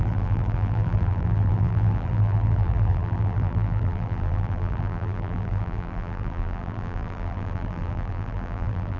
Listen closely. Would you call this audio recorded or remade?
remade